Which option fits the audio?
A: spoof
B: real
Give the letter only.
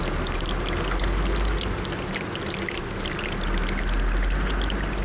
B